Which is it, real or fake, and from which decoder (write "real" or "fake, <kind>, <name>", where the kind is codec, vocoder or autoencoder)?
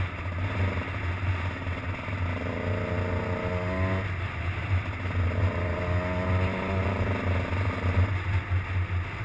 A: real